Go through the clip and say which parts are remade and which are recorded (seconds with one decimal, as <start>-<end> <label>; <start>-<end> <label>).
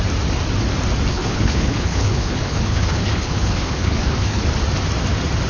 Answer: 0.0-1.1 recorded; 1.1-4.4 remade; 4.4-5.5 recorded